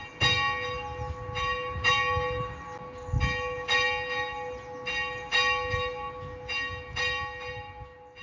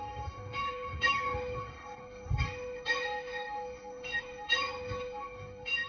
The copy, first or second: second